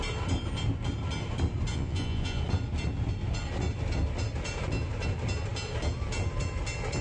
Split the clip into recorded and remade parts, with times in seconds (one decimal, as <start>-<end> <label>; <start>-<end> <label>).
0.0-1.7 recorded; 1.7-2.4 remade; 2.4-7.0 recorded